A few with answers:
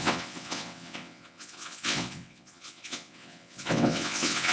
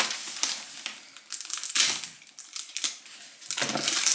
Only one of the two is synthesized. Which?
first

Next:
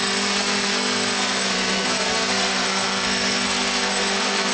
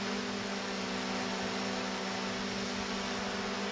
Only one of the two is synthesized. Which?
first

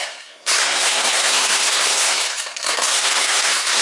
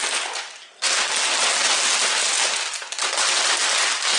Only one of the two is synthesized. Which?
first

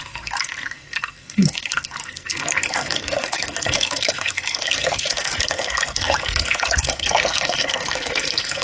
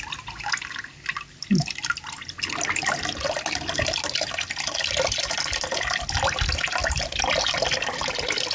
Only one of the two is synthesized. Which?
first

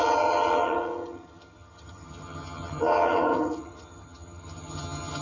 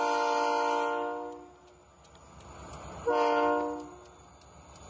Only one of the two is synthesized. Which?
first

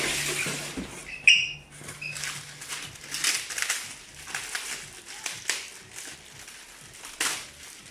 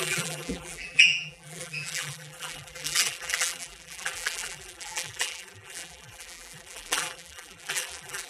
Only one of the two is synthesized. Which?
second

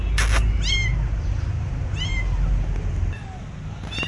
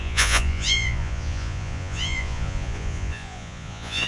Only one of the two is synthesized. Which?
second